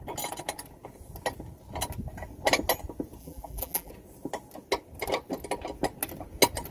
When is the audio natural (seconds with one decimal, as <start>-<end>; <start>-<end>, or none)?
0.0-3.2; 3.9-6.7